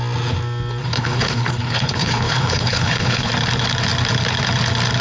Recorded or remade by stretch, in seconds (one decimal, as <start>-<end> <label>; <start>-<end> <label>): 0.0-0.8 recorded; 0.8-3.3 remade; 3.3-5.0 recorded